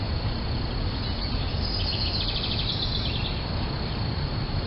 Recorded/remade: recorded